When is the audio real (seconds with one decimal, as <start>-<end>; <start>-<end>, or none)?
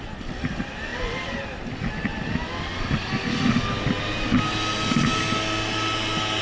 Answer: 0.9-1.9; 2.7-6.4